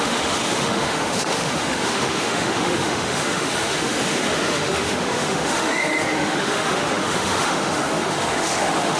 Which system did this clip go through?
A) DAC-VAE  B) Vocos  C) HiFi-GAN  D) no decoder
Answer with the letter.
A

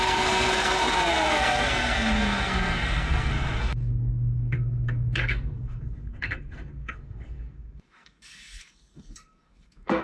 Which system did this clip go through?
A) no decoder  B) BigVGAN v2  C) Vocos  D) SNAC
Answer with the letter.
D